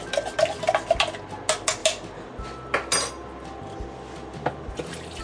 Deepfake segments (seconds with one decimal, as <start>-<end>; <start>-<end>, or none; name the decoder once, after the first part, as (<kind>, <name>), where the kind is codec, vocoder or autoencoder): none